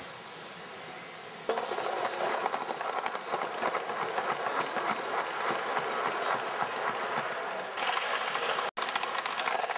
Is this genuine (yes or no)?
yes